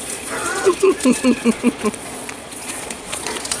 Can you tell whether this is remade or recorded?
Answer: remade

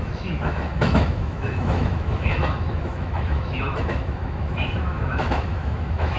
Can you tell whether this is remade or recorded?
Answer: remade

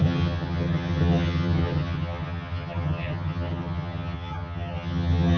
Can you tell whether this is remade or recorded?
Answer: remade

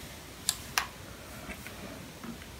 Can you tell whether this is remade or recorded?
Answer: recorded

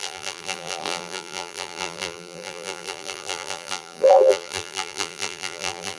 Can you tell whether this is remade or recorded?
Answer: remade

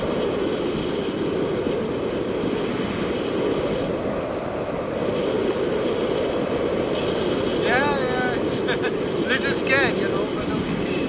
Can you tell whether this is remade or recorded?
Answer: recorded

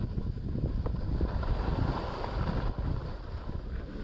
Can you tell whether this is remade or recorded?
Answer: recorded